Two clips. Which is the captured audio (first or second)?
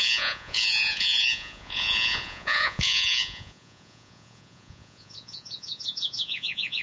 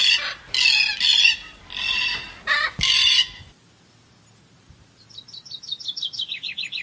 second